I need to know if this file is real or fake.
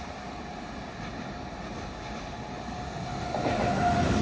real